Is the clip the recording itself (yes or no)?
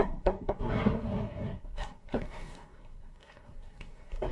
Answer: no